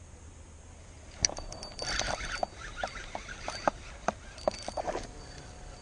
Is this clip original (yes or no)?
yes